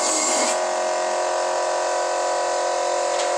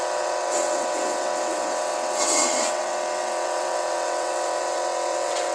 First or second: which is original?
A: first